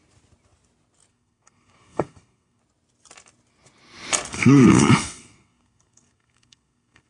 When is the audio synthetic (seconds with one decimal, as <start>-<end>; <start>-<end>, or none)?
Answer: 1.1-2.6; 4.3-7.1